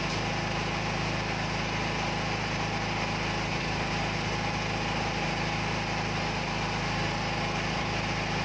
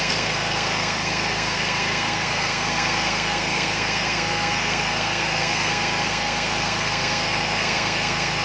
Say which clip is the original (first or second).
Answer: first